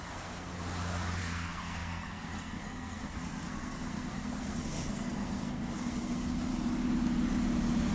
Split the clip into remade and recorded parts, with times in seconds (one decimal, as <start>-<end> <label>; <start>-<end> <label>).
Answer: 0.0-0.5 remade; 0.5-1.2 recorded; 1.2-6.5 remade; 6.5-7.9 recorded